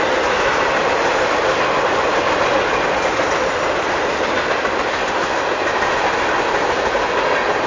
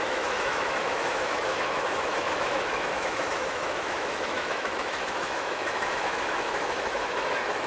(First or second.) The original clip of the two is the first